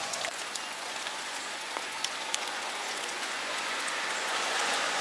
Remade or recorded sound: remade